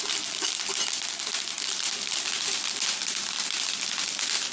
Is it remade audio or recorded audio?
recorded